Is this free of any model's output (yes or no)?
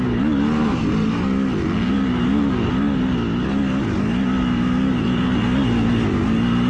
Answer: yes